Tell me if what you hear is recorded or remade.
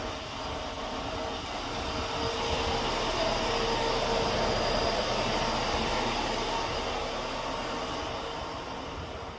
recorded